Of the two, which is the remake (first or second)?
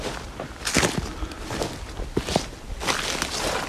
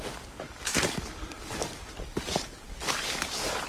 second